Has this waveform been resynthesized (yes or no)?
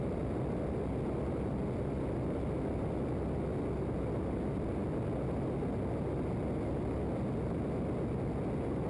no